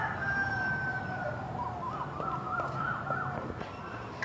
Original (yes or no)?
yes